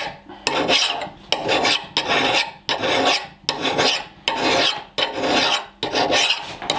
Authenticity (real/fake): real